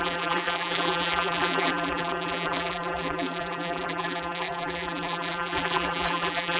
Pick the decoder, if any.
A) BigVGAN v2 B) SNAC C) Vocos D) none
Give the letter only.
A